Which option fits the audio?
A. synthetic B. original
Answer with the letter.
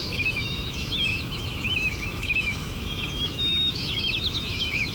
A